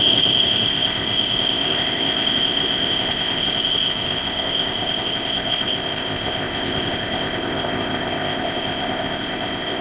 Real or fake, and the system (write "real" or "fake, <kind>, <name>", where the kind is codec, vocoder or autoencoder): fake, codec, ZipCodec